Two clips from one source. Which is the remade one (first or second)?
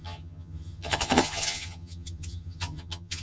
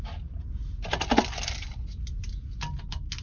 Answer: first